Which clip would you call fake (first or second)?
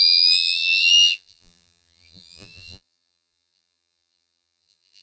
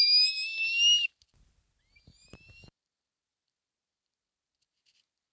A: first